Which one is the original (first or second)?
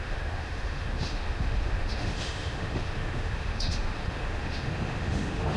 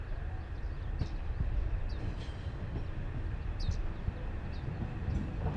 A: second